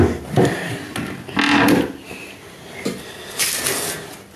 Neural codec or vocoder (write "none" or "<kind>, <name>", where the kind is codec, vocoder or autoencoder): none